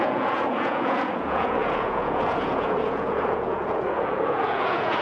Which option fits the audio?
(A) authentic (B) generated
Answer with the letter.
B